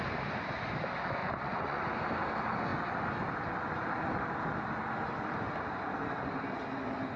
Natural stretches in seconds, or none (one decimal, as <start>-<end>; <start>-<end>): 0.0-1.2; 1.8-7.2